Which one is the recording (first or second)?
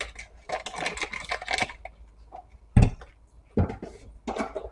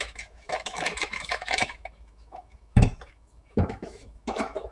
first